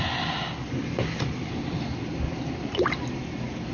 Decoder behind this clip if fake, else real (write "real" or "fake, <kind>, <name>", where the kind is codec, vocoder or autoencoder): real